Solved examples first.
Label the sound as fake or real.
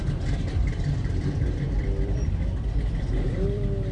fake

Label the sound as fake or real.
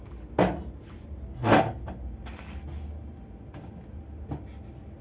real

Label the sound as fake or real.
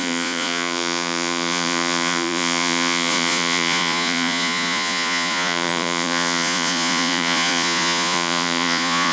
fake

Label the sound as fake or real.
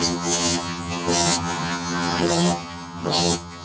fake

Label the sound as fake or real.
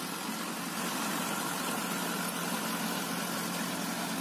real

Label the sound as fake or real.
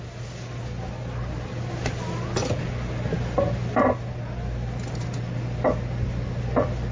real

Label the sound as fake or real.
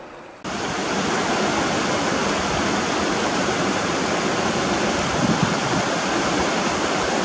real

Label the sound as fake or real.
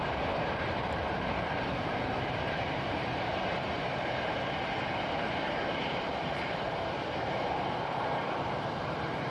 fake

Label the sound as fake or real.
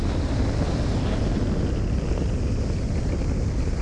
real